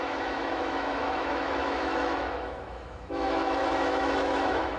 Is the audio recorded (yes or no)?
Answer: no